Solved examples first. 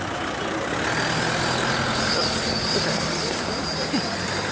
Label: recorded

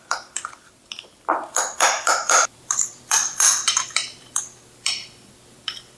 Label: remade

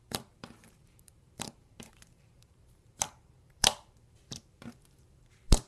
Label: remade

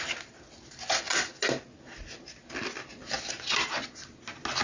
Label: recorded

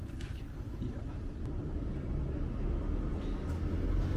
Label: recorded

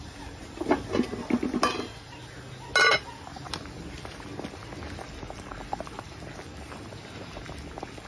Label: recorded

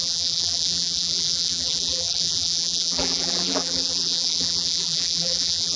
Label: remade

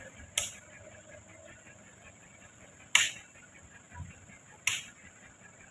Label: recorded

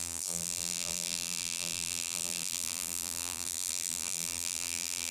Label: remade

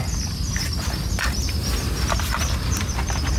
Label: recorded